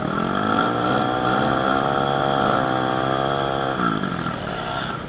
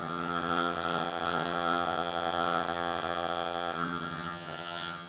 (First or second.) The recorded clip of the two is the first